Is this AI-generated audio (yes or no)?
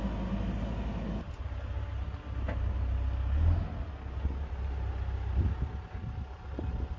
no